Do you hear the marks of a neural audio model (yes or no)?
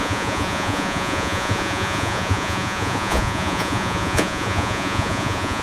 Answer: yes